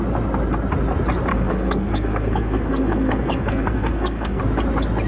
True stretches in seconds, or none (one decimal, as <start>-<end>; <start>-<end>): 0.0-1.3; 4.4-5.1